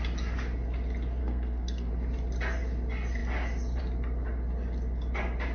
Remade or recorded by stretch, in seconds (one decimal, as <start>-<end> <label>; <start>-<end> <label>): 0.0-1.2 recorded; 1.2-1.9 remade; 1.9-5.5 recorded